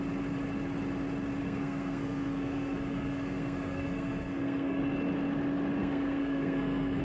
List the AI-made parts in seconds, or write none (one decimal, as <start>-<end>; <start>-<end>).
1.4-4.8; 5.8-7.0